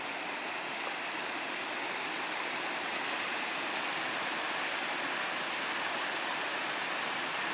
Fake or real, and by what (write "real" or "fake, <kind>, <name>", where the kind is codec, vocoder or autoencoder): real